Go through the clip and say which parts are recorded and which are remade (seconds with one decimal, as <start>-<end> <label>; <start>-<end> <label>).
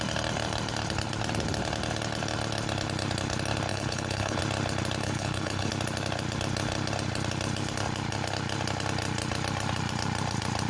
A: 0.0-3.7 recorded; 3.7-4.4 remade; 4.4-5.0 recorded; 5.0-5.7 remade; 5.7-10.7 recorded